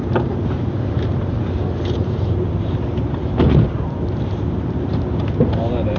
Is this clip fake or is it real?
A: fake